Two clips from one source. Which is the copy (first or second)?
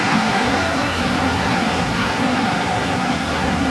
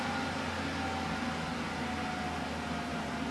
first